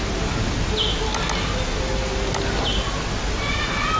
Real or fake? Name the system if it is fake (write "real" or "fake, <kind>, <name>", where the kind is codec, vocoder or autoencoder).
real